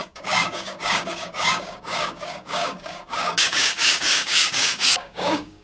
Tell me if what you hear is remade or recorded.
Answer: remade